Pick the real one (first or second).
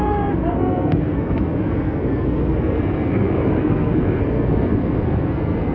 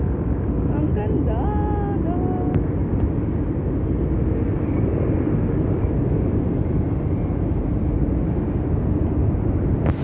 second